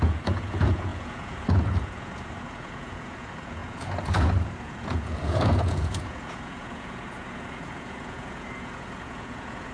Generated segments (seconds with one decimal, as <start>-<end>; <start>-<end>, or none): 0.0-9.7